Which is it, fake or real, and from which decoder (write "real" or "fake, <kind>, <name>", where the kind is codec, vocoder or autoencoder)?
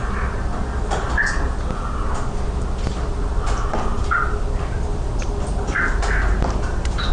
real